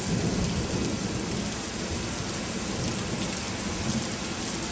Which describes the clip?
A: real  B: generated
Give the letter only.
A